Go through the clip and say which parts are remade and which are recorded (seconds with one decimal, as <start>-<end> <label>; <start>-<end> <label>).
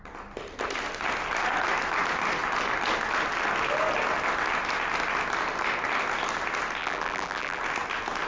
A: 0.0-6.8 recorded; 6.8-7.6 remade; 7.6-8.3 recorded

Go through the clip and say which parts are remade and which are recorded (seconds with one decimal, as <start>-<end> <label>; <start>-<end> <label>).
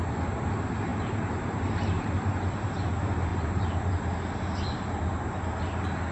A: 0.0-0.9 recorded; 0.9-2.5 remade; 2.5-3.3 recorded; 3.3-3.9 remade; 3.9-5.1 recorded; 5.1-5.6 remade; 5.6-6.1 recorded